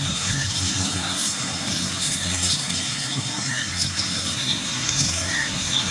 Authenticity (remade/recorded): remade